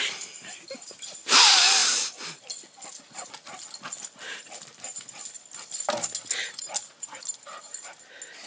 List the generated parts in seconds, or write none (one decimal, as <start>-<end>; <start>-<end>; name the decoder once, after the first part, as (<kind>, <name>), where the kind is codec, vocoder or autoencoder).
none